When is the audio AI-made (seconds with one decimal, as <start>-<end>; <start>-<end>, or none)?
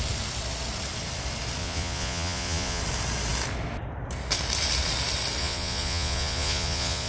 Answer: 1.6-2.8; 5.4-7.1